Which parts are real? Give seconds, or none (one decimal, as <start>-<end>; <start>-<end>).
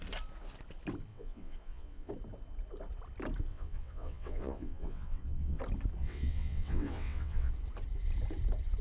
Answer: 0.0-1.1; 2.1-3.5; 5.6-6.0; 7.5-8.8